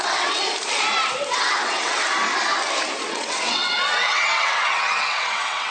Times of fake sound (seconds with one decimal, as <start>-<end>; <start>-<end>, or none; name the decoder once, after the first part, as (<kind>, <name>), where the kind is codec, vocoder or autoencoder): 0.0-0.4 (vocoder, WaveNeXt); 1.3-2.0; 3.0-5.7